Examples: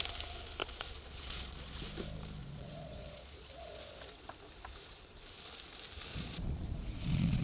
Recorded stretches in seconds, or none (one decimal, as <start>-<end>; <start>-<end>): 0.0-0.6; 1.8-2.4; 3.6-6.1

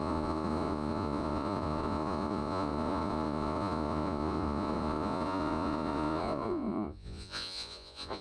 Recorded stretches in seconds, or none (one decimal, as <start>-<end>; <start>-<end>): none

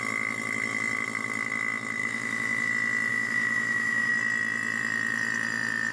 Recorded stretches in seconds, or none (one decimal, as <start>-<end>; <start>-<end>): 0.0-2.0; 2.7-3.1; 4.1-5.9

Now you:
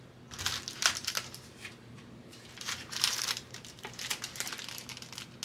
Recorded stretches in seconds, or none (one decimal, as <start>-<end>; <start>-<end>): 0.0-0.8; 4.0-5.4

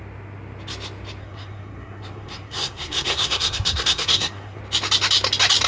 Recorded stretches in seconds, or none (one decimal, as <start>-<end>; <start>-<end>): 0.0-1.2; 4.6-5.7